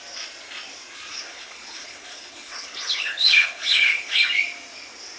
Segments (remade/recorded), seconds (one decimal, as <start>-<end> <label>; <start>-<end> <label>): 0.0-1.1 recorded; 1.1-4.2 remade; 4.2-5.2 recorded